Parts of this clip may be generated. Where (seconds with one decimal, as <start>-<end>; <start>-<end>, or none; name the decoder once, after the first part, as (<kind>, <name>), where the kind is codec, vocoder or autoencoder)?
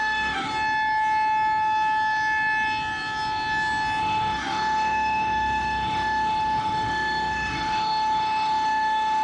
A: 0.0-0.5 (autoencoder, DAC-VAE); 4.0-9.2